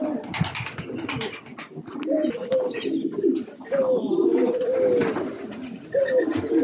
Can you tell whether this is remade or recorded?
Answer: recorded